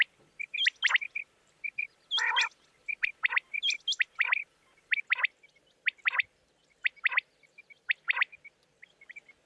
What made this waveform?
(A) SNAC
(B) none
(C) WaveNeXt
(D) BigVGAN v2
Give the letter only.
B